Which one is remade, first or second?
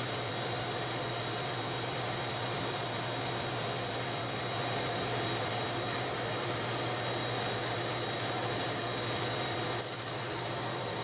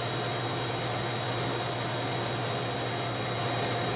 first